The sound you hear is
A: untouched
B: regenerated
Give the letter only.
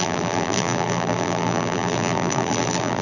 B